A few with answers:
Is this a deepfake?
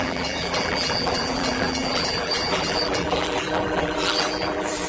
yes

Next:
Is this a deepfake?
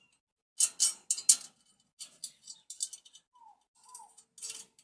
no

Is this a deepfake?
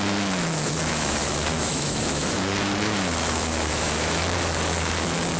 yes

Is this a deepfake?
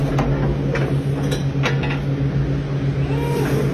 no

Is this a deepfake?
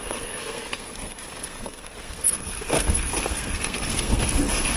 yes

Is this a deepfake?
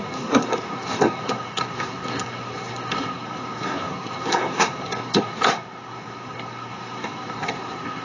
yes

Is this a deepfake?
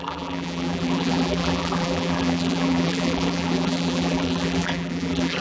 yes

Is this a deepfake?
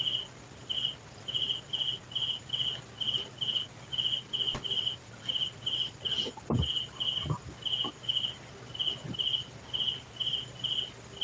no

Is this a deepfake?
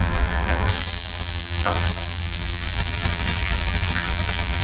yes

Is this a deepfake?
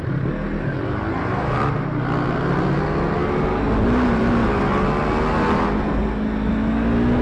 no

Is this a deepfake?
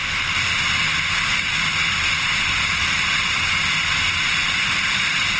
no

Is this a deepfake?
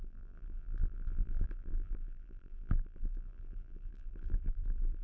yes